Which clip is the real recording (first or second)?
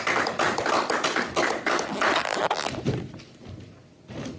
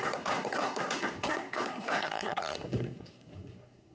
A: first